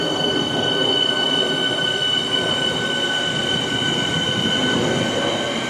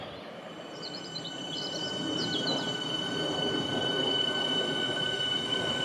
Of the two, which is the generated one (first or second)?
second